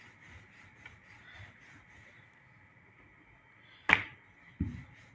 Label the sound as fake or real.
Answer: real